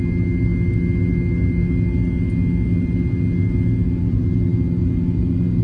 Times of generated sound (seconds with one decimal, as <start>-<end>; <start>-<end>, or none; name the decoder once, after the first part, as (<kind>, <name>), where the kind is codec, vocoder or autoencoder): none